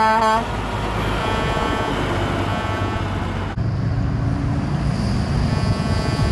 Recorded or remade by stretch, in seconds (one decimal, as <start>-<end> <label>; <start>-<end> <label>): 0.0-1.2 recorded; 1.2-1.9 remade; 1.9-2.5 recorded; 2.5-3.0 remade; 3.0-5.5 recorded; 5.5-6.3 remade